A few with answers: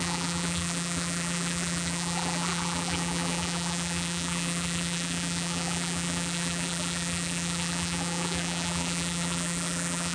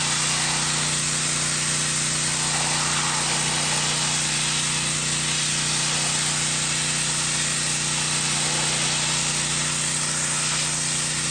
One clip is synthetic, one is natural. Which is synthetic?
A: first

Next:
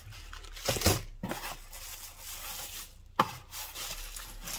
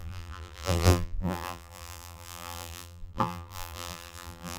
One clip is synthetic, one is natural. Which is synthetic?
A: second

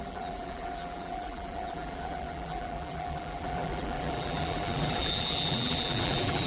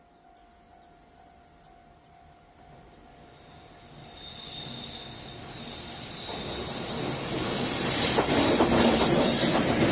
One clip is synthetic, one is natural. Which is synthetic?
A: first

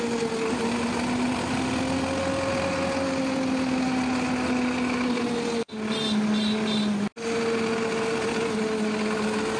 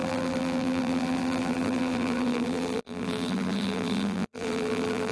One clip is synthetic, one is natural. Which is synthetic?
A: second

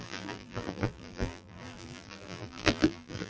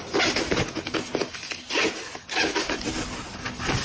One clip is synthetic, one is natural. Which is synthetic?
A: first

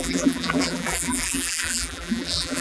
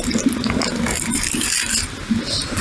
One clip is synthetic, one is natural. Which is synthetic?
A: first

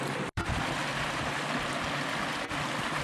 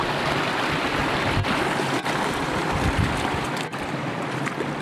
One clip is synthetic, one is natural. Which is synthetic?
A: first